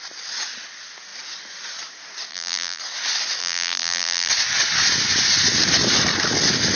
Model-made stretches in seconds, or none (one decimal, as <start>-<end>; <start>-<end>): 2.3-2.8; 3.4-4.3